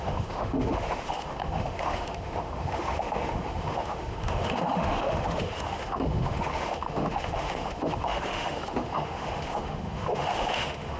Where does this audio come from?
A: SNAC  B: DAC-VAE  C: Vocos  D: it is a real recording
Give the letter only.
B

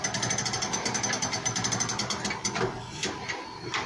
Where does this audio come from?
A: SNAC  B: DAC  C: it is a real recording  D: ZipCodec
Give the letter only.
C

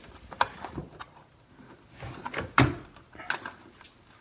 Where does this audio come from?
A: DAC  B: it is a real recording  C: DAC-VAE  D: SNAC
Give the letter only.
B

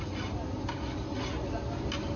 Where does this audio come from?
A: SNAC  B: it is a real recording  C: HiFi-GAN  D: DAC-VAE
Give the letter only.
B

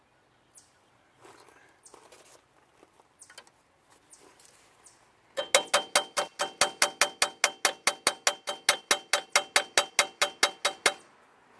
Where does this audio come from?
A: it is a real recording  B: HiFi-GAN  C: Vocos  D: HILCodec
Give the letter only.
A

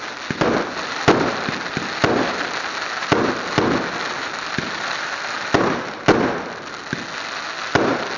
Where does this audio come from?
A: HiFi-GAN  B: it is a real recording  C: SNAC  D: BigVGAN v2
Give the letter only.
B